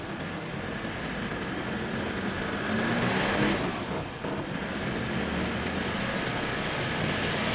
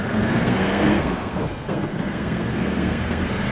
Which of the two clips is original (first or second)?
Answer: first